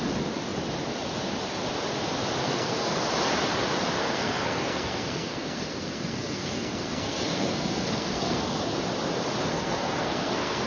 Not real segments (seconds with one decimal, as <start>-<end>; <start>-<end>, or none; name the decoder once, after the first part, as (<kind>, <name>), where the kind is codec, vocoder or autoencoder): 2.4-3.0 (codec, SNAC); 4.0-8.8; 9.5-10.7